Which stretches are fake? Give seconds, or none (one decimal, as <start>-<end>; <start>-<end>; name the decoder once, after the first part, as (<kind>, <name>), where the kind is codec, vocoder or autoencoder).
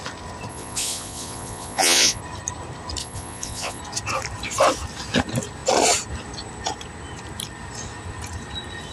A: 0.5-2.2 (vocoder, Vocos); 3.0-3.8